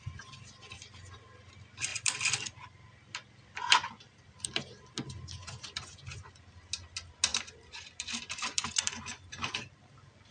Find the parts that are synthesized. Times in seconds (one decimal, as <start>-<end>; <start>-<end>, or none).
1.9-4.9; 7.3-10.3